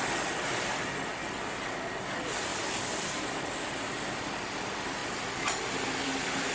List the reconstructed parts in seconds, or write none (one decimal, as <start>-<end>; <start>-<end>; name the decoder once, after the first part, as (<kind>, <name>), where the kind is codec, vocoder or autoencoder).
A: none